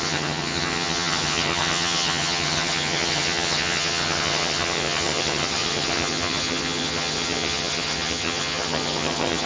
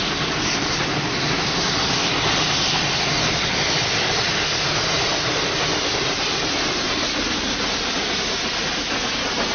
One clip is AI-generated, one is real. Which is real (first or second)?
second